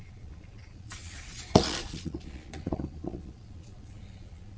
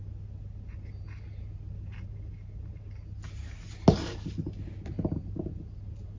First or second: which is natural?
second